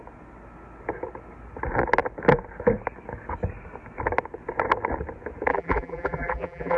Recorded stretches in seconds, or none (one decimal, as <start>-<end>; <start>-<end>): 0.0-5.5